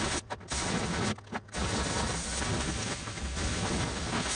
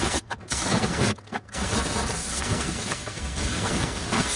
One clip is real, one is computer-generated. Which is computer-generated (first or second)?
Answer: second